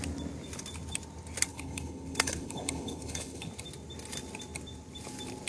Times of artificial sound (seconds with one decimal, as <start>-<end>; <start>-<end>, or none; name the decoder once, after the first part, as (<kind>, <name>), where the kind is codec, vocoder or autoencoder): 1.5-3.5 (codec, HILCodec)